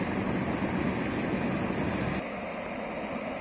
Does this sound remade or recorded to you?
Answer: recorded